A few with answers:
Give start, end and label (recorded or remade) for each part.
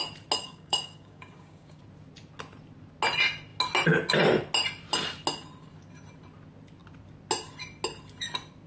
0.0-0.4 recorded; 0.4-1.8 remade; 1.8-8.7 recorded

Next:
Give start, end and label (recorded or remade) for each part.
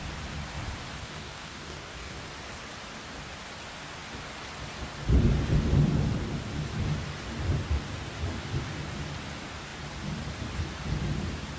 0.0-1.0 recorded; 1.0-2.2 remade; 2.2-11.6 recorded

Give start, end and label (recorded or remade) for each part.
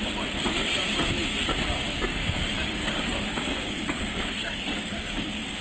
0.0-2.1 recorded; 2.1-5.6 remade